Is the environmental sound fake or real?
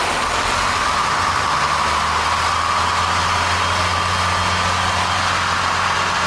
real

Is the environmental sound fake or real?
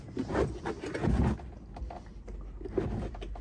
real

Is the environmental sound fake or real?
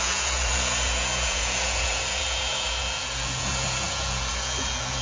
fake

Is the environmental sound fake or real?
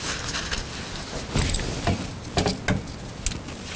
real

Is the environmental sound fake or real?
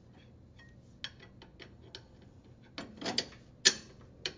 real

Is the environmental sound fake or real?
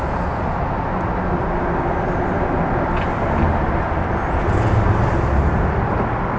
real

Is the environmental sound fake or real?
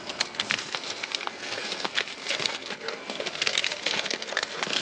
fake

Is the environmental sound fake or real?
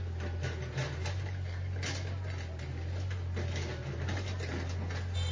real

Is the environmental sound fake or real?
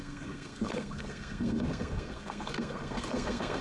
fake